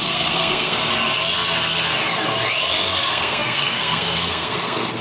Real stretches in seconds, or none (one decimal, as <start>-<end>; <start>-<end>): 0.8-2.9